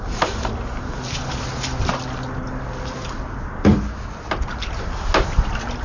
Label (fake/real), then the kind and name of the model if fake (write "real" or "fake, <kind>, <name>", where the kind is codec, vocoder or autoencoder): real